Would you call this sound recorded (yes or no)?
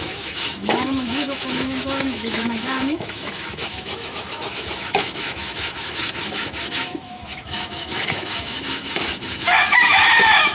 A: no